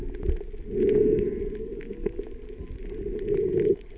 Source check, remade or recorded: recorded